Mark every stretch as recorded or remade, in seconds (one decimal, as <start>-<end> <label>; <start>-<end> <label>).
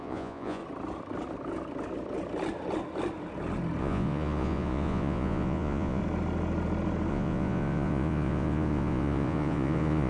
0.0-0.6 remade; 0.6-3.8 recorded; 3.8-6.0 remade; 6.0-7.1 recorded; 7.1-10.1 remade